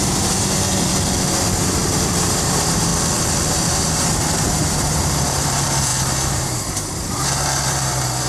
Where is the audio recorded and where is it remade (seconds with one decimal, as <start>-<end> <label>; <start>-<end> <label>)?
0.0-0.9 remade; 0.9-1.9 recorded; 1.9-2.9 remade; 2.9-3.5 recorded; 3.5-8.3 remade